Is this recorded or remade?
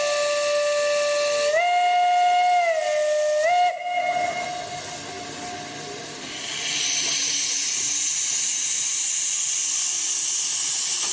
recorded